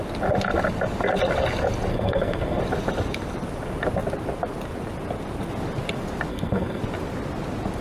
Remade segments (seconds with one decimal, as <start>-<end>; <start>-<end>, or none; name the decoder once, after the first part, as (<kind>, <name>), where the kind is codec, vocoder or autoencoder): 1.9-2.6 (codec, SNAC); 6.3-6.8